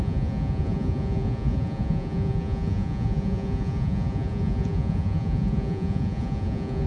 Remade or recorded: remade